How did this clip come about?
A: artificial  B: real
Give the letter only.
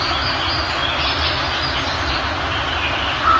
B